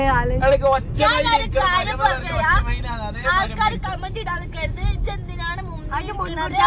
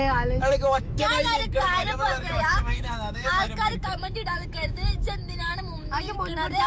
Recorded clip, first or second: first